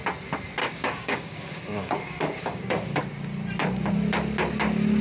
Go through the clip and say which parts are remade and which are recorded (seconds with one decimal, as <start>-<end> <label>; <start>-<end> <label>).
0.0-0.6 recorded; 0.6-3.0 remade; 3.0-5.0 recorded